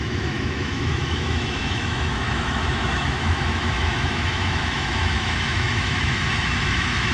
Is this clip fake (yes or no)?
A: yes